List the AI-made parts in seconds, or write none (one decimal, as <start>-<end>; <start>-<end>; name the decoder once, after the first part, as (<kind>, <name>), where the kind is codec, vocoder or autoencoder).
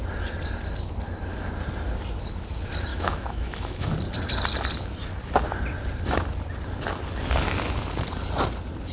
2.9-3.9 (autoencoder, DAC-VAE)